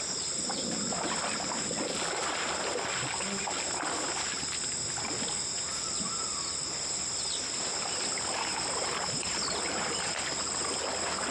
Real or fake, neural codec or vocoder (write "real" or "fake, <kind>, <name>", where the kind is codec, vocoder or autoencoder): real